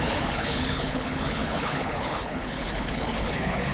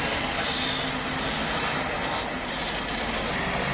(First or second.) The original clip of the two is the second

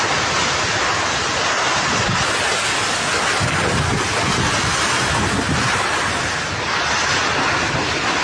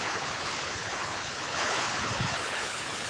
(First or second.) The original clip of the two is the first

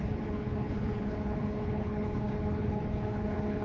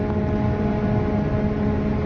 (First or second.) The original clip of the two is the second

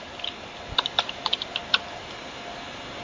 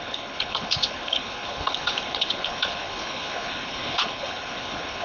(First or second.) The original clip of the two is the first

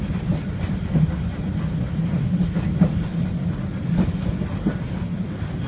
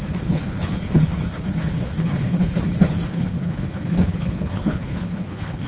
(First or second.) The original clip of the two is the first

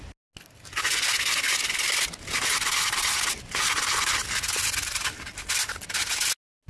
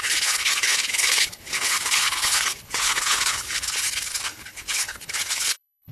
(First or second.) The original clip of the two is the first